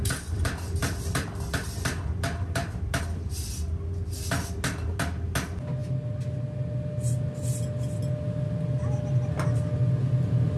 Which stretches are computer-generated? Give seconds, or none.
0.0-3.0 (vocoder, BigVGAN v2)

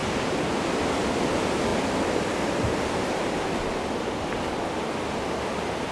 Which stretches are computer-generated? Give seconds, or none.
0.0-0.7 (vocoder, BigVGAN v2)

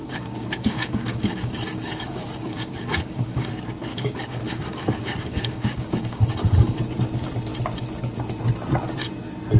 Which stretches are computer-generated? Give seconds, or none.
0.0-3.5 (codec, DAC); 3.9-6.8

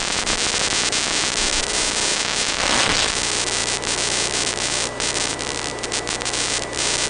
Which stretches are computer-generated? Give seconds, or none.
2.6-3.1 (codec, SNAC)

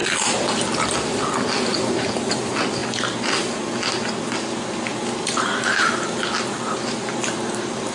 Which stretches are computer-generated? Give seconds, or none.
none